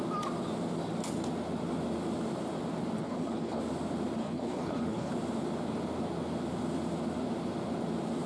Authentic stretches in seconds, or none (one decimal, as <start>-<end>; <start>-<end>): 0.0-3.0; 3.6-4.2; 5.1-8.3

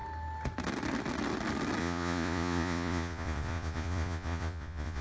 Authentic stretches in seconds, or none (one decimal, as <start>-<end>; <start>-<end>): 0.0-1.8

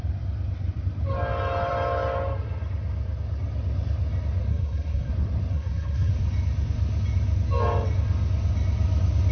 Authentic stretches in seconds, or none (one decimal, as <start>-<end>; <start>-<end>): 0.0-4.5; 5.1-5.5; 6.1-9.3

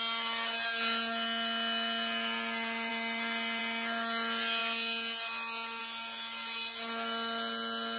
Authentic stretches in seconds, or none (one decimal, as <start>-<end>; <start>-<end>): 0.0-8.0

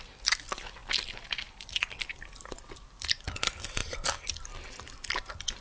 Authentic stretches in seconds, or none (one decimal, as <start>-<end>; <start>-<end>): 0.0-5.6